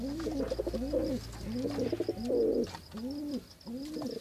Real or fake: real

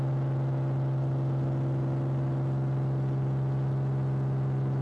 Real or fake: real